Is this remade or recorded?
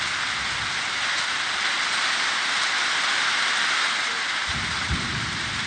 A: recorded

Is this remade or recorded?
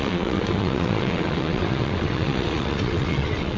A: remade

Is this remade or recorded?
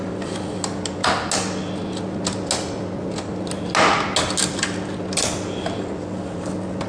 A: recorded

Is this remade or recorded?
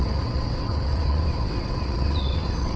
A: remade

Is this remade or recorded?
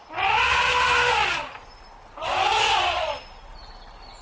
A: recorded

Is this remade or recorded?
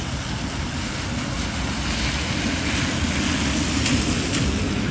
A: recorded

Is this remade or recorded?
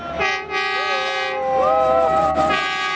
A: recorded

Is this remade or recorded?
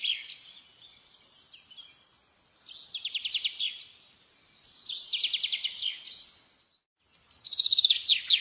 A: recorded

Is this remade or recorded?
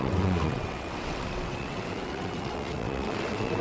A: remade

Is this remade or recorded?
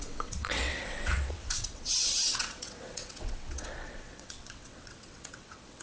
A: remade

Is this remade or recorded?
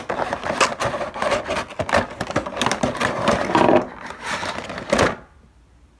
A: recorded